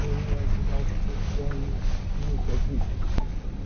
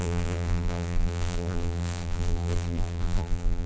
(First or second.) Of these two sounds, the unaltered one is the first